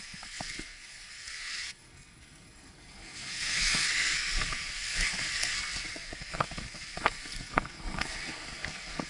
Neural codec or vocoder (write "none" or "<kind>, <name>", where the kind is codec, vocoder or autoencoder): codec, SNAC